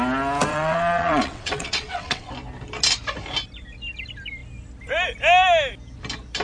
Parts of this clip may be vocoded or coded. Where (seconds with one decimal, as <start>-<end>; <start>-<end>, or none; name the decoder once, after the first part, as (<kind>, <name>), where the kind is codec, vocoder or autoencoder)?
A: 0.5-2.3 (vocoder, WaveNeXt)